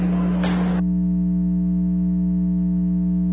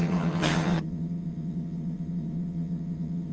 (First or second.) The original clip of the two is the first